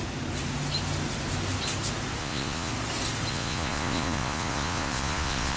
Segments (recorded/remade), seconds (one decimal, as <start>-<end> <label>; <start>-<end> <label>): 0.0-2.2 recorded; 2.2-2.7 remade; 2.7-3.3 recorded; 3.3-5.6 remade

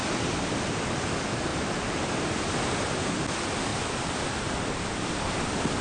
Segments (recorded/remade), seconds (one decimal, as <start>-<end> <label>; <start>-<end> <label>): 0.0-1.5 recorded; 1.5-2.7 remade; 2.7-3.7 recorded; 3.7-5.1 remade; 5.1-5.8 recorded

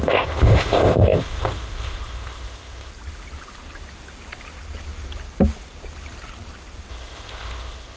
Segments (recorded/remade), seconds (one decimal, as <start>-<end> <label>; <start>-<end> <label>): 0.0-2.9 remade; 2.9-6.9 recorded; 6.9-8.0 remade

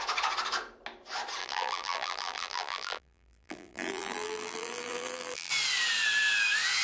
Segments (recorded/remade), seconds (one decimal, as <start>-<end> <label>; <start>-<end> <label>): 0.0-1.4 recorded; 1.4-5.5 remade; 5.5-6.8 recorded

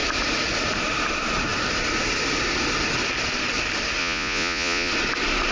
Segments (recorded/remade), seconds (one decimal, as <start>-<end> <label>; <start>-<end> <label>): 0.0-4.0 recorded; 4.0-4.9 remade; 4.9-5.5 recorded